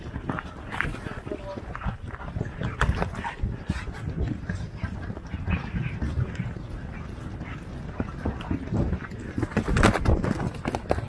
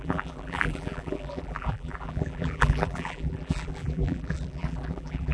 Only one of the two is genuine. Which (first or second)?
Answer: first